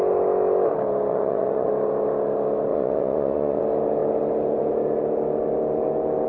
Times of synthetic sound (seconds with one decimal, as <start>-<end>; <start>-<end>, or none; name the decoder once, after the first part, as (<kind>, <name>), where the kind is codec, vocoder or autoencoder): 1.1-1.7 (vocoder, Vocos); 2.7-3.6